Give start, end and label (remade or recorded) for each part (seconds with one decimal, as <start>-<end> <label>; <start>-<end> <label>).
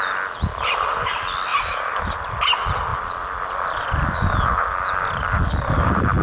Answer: 0.0-6.2 remade